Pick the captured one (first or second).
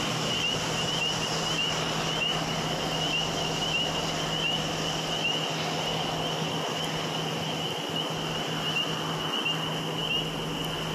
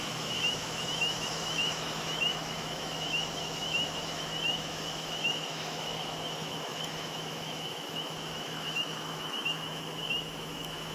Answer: first